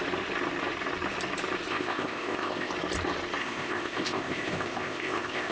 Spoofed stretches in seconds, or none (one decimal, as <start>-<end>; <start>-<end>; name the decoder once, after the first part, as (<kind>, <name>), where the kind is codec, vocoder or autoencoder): 1.7-2.7 (codec, ZipCodec); 3.4-5.5